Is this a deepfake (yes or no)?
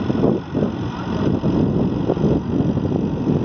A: no